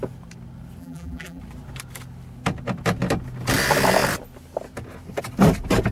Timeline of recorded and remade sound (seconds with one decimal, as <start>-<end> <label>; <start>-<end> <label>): 0.0-0.8 recorded; 0.8-1.4 remade; 1.4-5.9 recorded